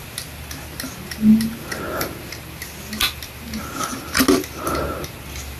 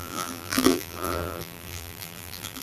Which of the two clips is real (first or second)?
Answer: first